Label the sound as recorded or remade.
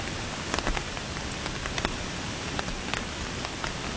recorded